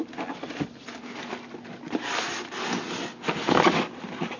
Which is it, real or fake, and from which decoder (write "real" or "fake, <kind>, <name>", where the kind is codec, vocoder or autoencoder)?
real